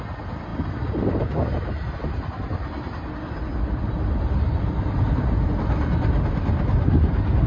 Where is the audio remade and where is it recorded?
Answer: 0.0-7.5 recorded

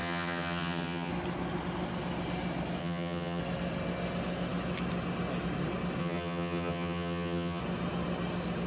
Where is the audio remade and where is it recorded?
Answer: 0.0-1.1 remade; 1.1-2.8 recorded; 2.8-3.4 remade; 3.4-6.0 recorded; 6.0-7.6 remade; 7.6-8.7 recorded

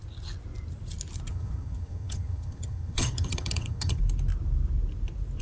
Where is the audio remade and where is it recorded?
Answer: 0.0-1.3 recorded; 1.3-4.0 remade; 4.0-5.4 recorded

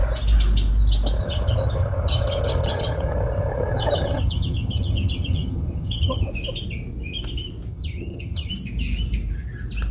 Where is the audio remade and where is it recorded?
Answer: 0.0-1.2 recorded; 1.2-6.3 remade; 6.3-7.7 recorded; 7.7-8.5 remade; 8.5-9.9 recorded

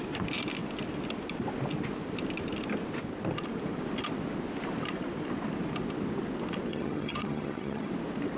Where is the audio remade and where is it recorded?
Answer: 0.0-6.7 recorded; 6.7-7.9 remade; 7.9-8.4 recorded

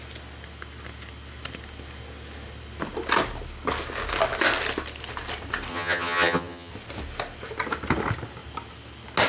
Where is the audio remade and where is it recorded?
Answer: 0.0-5.7 recorded; 5.7-6.7 remade; 6.7-9.3 recorded

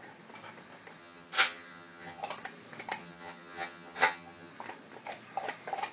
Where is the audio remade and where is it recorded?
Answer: 0.0-1.0 recorded; 1.0-2.2 remade; 2.2-3.0 recorded; 3.0-4.5 remade; 4.5-5.9 recorded